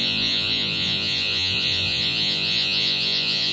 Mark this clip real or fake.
fake